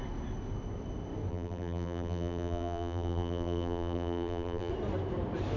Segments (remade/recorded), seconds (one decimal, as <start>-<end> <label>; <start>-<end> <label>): 0.0-1.3 recorded; 1.3-4.7 remade; 4.7-5.6 recorded